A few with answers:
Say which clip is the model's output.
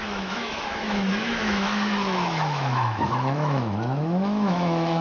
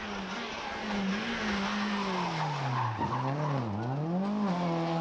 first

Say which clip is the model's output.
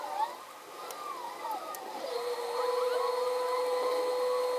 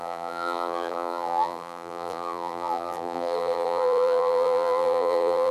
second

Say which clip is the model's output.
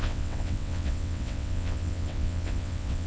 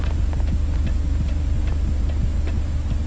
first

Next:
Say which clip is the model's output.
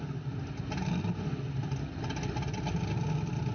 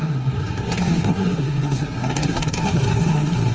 second